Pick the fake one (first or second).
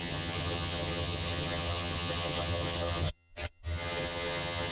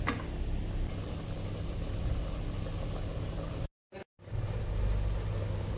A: first